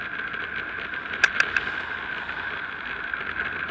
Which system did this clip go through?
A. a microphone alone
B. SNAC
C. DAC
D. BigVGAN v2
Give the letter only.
A